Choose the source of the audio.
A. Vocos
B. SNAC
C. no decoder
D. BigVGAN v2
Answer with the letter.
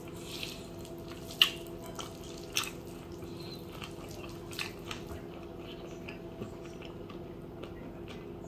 C